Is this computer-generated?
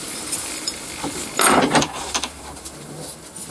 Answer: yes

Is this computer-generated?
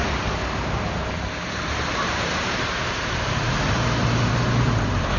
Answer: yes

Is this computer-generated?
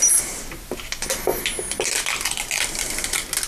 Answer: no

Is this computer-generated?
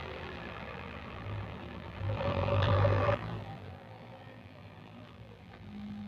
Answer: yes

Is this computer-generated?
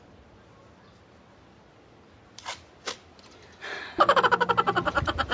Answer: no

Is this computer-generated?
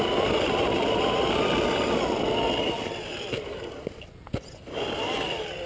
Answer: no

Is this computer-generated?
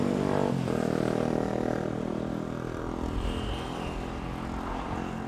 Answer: no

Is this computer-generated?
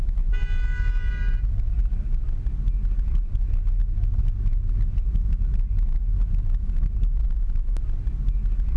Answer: no